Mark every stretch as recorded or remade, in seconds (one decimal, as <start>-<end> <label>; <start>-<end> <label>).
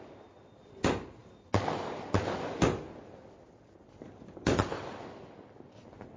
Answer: 0.0-1.2 recorded; 1.2-2.2 remade; 2.2-6.2 recorded